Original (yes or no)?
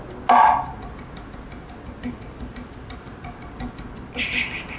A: yes